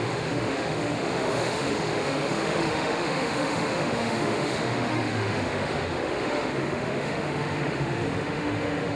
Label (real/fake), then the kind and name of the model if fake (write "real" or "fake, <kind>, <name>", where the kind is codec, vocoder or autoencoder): fake, autoencoder, DAC-VAE